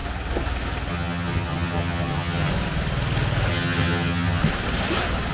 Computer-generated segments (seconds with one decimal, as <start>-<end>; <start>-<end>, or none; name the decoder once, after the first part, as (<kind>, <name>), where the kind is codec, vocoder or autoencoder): 0.9-2.5 (vocoder, HiFi-GAN); 3.5-4.4